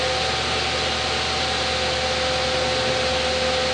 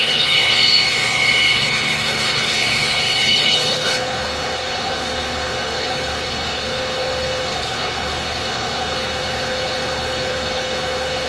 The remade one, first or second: second